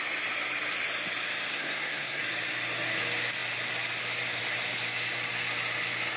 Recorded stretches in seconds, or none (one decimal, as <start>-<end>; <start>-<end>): 0.0-1.5; 2.2-6.2